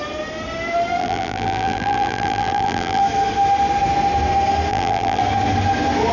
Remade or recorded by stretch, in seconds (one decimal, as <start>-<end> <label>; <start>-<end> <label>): 0.0-1.0 recorded; 1.0-3.0 remade; 3.0-4.7 recorded; 4.7-5.2 remade; 5.2-6.1 recorded